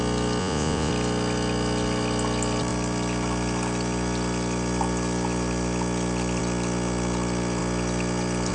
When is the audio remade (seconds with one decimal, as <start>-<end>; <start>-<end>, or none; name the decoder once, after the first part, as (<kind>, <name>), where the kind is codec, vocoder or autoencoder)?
0.4-0.9 (vocoder, Vocos)

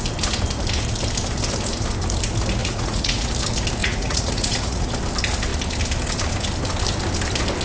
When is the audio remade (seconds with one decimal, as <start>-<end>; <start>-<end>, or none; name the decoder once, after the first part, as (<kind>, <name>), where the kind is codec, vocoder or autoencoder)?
2.6-3.3 (vocoder, Vocos); 3.8-4.9